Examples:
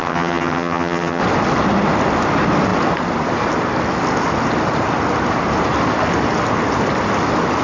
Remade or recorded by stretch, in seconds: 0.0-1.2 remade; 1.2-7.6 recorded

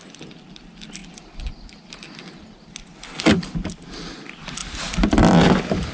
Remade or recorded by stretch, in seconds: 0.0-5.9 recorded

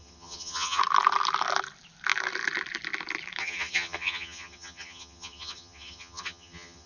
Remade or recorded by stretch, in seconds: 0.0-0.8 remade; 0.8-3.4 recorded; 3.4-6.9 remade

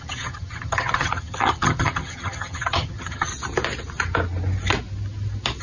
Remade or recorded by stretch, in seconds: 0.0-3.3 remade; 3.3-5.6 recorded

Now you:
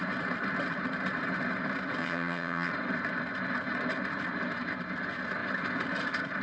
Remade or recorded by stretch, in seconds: 0.0-2.0 recorded; 2.0-2.7 remade; 2.7-6.4 recorded

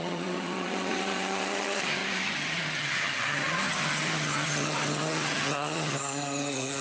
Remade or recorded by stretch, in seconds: 0.0-6.8 remade